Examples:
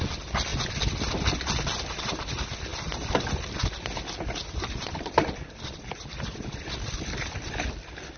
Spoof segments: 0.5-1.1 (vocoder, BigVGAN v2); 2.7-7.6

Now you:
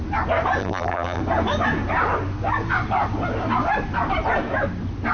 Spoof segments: 0.6-1.2 (vocoder, BigVGAN v2)

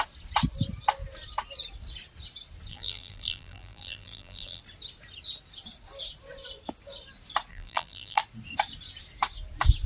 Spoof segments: 2.7-4.6 (vocoder, BigVGAN v2); 7.5-8.2

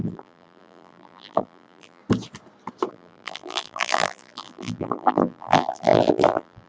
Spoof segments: 0.0-2.0 (vocoder, BigVGAN v2); 2.9-6.7

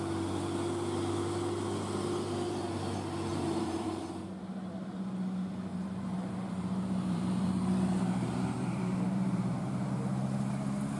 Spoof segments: 3.3-4.7 (vocoder, BigVGAN v2); 5.7-10.5

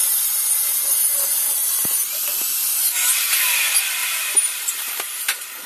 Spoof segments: 4.0-5.2 (vocoder, BigVGAN v2)